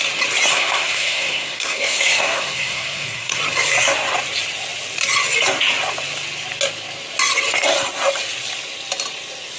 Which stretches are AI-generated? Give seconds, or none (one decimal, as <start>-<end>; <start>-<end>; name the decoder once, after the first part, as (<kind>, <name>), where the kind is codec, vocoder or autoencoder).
0.5-3.4 (codec, SNAC)